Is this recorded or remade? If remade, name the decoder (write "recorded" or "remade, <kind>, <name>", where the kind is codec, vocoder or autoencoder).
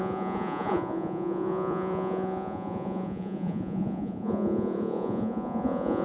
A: remade, vocoder, Vocos